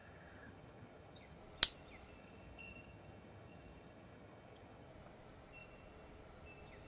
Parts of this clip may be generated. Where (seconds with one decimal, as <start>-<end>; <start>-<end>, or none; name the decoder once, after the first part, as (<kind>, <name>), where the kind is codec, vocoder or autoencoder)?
0.0-1.4 (vocoder, HiFi-GAN); 2.2-4.9